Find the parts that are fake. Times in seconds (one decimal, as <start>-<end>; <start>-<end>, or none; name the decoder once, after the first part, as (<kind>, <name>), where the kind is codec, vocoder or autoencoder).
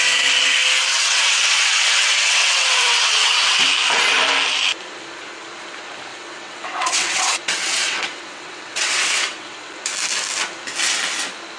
0.9-3.7 (vocoder, WaveNeXt); 6.1-9.7